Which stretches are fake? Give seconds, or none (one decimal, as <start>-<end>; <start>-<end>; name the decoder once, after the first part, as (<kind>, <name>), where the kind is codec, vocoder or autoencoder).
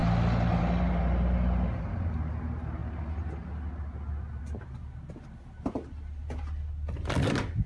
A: none